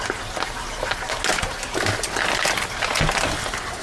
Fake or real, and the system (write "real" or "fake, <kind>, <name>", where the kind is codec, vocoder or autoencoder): real